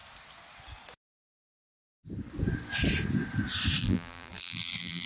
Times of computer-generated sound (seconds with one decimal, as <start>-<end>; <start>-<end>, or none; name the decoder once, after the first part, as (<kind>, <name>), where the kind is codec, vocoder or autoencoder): 3.8-5.1 (vocoder, BigVGAN v2)